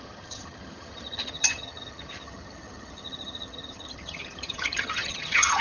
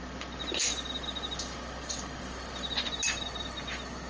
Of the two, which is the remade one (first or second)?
first